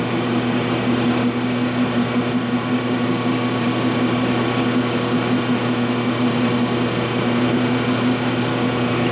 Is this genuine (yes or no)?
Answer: yes